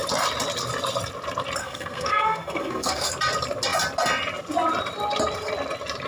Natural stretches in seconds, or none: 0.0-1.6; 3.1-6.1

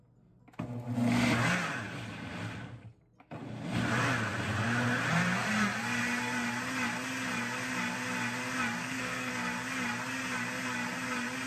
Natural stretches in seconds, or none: 0.0-8.8; 9.3-11.5

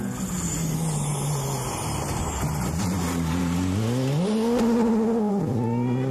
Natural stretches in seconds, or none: 0.0-6.1

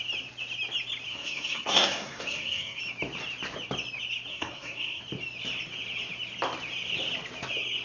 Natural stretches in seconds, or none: 0.0-1.1; 2.8-4.3; 5.0-7.8

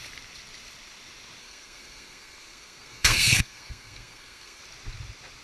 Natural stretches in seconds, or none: 0.0-1.4; 4.6-5.4

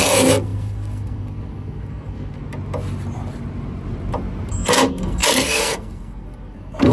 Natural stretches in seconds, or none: 2.4-4.5